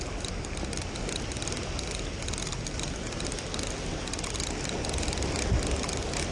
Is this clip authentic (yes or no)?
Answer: yes